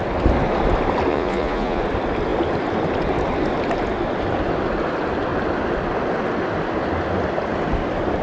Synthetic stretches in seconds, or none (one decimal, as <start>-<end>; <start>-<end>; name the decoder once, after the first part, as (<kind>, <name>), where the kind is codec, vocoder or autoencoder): 1.1-1.8 (vocoder, Vocos)